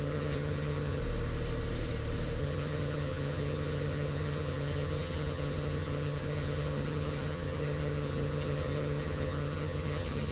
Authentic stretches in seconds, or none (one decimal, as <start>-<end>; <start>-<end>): 1.0-2.4

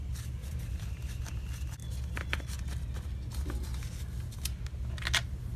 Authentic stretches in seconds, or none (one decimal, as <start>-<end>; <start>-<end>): 0.0-0.4; 1.2-5.6

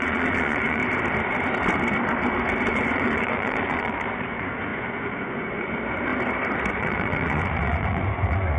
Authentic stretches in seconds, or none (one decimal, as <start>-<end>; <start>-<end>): 0.8-2.7; 6.1-6.7

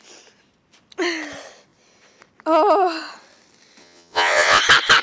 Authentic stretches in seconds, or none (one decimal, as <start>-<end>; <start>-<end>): 0.0-3.8; 4.6-5.0

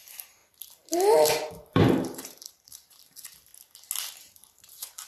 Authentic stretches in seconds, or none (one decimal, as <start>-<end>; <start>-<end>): 0.4-1.5; 3.5-4.1

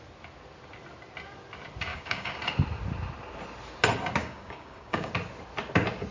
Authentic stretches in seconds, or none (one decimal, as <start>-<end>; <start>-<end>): 0.0-1.9; 2.4-4.2; 5.1-6.1

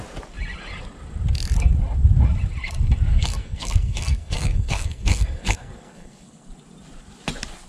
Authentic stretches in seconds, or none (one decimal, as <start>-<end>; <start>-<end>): 0.0-3.1; 6.5-7.7

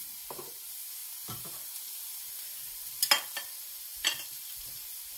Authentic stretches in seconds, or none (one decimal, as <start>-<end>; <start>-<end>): 0.0-5.2